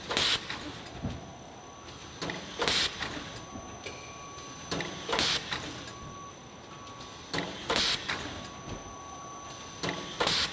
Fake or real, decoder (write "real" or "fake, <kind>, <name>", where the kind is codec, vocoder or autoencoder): real